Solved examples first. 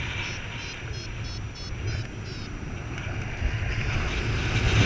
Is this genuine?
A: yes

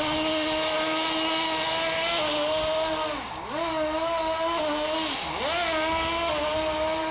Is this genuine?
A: yes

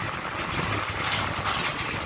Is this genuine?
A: yes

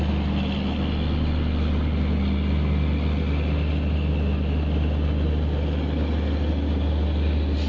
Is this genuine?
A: yes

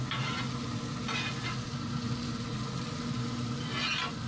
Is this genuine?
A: yes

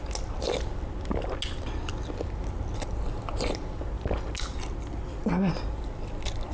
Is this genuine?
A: yes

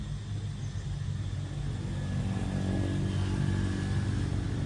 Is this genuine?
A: yes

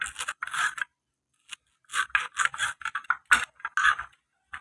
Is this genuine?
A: yes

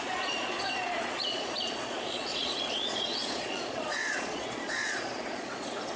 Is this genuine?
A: no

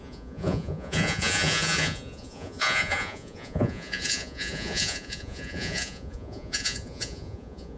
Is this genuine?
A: no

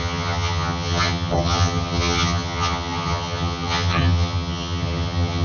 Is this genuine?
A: no